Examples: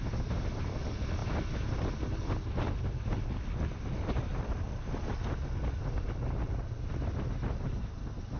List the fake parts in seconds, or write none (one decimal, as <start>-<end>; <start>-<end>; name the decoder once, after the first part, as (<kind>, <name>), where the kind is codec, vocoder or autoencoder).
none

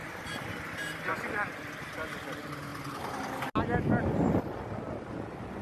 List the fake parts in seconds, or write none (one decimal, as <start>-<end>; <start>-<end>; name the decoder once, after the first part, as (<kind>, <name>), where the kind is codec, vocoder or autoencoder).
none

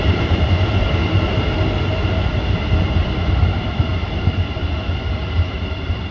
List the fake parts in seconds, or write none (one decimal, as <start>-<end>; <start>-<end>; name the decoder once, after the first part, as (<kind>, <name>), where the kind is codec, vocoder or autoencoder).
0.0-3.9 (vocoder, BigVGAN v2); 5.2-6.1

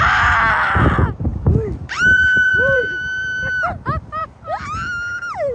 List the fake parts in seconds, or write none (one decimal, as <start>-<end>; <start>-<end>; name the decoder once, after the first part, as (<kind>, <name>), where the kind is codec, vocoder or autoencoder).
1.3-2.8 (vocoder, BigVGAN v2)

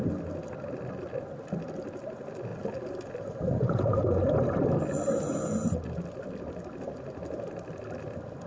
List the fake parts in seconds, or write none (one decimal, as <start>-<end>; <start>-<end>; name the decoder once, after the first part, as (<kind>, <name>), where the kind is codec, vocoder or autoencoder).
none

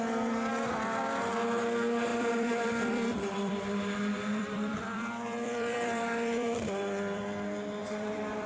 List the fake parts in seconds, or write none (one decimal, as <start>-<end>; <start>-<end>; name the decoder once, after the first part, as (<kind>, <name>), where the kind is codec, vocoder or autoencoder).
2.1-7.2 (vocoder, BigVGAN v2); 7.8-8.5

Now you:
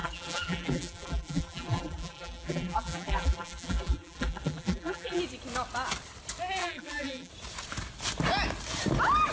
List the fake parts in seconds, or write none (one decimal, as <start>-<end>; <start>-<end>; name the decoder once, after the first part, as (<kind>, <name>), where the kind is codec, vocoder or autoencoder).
0.0-5.2 (vocoder, BigVGAN v2); 6.6-7.3

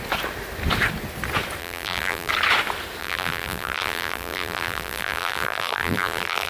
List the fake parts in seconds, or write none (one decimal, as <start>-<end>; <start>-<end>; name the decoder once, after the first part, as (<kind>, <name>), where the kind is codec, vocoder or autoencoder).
1.6-2.3 (vocoder, BigVGAN v2); 3.0-6.5